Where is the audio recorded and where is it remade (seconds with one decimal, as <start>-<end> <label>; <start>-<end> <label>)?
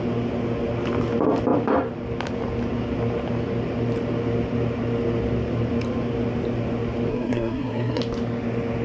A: 0.0-7.1 recorded; 7.1-8.0 remade; 8.0-8.8 recorded